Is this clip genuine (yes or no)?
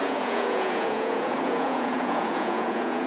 no